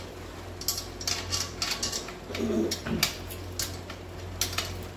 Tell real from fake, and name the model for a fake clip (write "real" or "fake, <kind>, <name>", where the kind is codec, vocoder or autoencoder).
real